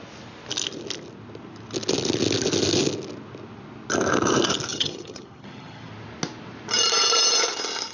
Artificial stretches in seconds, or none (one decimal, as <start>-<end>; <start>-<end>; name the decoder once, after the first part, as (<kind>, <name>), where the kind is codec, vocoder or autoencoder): 4.7-5.9 (vocoder, HiFi-GAN)